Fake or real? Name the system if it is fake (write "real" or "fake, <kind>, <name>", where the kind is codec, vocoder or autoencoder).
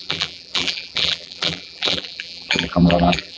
fake, vocoder, BigVGAN v2